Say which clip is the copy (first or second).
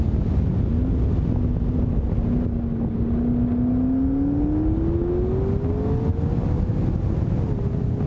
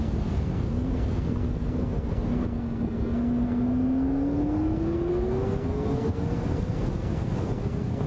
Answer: second